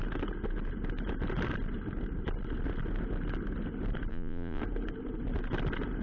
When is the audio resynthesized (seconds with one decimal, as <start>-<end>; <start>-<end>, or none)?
4.1-4.6